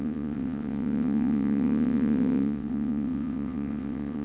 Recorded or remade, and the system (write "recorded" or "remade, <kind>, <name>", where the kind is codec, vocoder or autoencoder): remade, vocoder, WaveNeXt